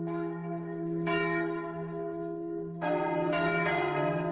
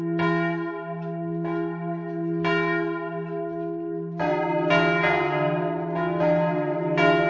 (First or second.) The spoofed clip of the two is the first